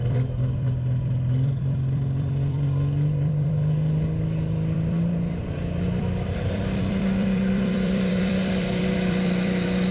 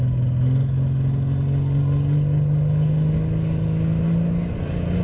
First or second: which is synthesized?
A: first